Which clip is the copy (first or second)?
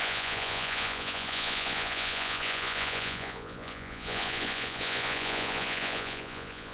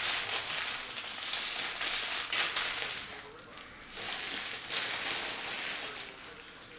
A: first